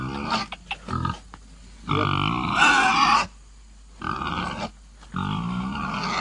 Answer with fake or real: real